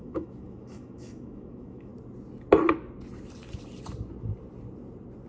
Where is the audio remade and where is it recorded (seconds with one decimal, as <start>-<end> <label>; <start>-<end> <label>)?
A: 0.0-1.9 remade; 1.9-5.3 recorded